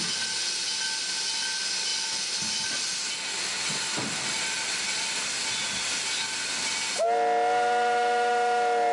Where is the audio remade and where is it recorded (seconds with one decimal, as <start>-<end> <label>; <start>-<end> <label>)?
0.0-8.9 recorded